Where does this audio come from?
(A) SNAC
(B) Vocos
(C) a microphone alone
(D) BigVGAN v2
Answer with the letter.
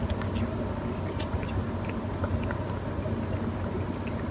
C